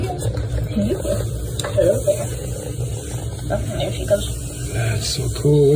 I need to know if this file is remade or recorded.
recorded